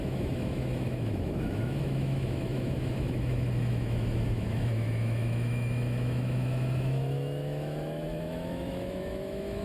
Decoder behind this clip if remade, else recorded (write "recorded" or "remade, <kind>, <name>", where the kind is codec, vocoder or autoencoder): remade, autoencoder, DAC-VAE